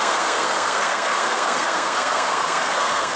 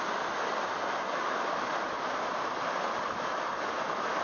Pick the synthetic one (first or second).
first